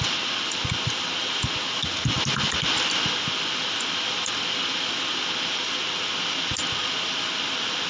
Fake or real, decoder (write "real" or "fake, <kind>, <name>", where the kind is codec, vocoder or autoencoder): real